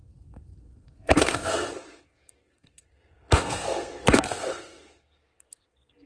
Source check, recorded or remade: remade